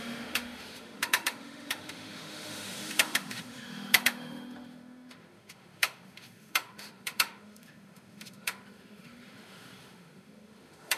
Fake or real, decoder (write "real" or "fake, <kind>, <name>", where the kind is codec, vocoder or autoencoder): fake, autoencoder, DAC-VAE